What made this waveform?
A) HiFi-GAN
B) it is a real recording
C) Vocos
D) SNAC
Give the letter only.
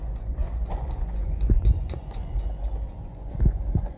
C